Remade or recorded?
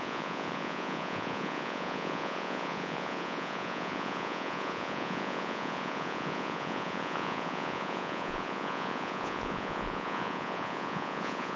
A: remade